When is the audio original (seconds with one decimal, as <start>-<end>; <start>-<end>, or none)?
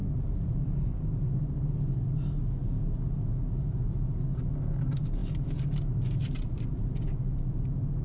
0.0-8.0